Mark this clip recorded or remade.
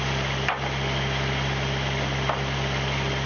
recorded